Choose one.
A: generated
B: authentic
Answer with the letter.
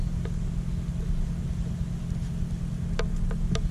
B